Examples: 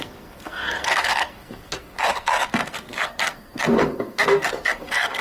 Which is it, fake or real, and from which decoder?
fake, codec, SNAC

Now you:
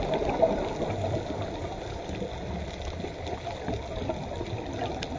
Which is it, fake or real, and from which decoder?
real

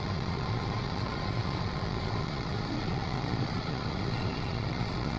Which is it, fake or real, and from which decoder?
fake, vocoder, Vocos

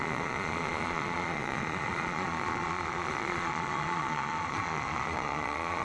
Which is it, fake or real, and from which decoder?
fake, vocoder, Vocos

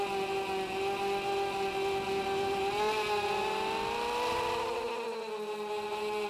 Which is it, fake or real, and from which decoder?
real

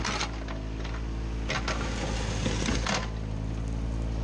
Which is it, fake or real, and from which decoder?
real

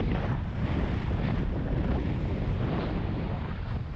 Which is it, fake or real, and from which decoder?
real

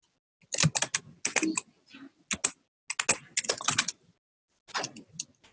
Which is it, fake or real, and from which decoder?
real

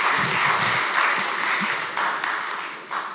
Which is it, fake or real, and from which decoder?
real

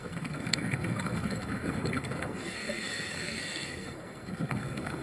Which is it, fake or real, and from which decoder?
fake, codec, SNAC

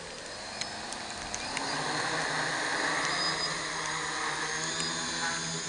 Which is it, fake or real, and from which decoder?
real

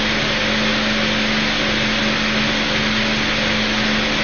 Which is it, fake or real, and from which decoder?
real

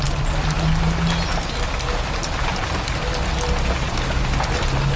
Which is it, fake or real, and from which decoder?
real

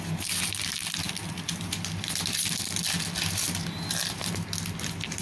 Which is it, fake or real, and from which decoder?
real